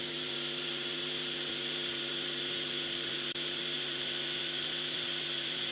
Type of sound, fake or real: fake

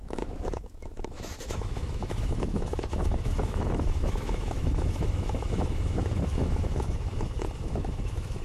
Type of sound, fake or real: fake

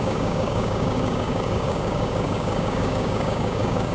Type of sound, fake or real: fake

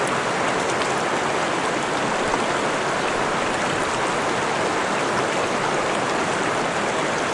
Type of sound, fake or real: real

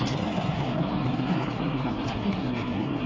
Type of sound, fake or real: fake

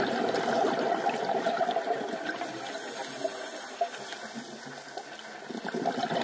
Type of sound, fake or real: real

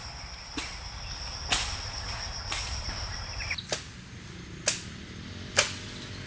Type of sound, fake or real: real